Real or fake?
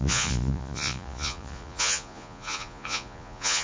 fake